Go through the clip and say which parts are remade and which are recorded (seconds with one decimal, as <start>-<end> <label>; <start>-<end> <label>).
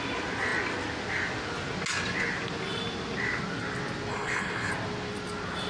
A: 0.0-4.1 recorded; 4.1-4.7 remade; 4.7-5.7 recorded